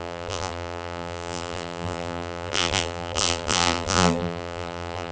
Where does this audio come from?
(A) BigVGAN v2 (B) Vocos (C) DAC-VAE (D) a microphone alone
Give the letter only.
A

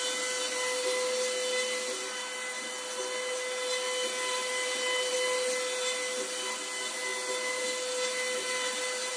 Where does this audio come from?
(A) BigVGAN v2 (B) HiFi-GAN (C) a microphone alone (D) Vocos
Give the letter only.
C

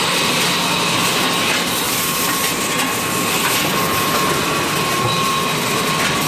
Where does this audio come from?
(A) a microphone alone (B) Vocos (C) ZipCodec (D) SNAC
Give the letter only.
A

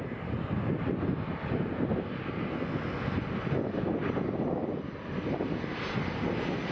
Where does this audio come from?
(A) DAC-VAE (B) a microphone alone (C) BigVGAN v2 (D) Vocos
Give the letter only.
B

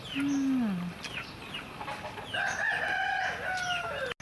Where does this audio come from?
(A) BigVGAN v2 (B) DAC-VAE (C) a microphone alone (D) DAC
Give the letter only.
C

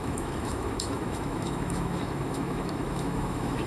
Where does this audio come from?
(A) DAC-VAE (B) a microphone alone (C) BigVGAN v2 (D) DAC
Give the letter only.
A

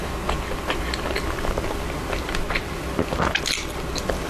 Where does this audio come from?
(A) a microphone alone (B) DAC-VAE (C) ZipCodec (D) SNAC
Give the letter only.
A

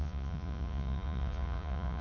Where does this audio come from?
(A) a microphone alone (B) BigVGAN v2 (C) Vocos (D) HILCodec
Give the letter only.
C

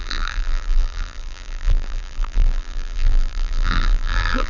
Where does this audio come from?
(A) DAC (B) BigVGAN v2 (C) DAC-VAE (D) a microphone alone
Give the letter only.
B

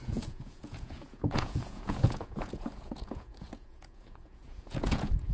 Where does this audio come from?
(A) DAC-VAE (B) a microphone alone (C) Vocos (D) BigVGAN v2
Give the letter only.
C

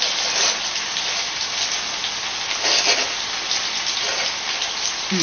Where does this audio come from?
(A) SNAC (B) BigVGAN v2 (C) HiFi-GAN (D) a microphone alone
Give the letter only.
D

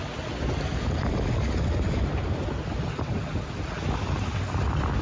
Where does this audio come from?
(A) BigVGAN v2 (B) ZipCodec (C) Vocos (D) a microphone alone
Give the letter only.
D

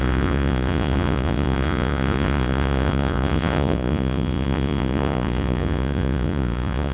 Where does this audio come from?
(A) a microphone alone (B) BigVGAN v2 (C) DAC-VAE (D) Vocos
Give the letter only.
D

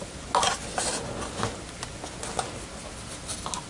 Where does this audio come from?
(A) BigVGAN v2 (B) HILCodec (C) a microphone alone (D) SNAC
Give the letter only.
C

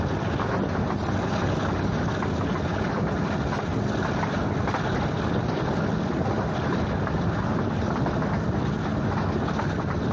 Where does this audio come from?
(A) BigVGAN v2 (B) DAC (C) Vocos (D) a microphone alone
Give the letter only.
D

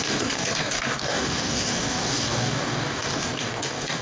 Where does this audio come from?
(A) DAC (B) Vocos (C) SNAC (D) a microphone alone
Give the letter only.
A